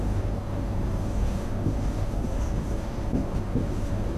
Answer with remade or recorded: remade